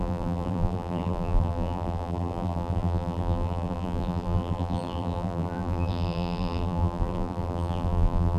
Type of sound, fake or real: fake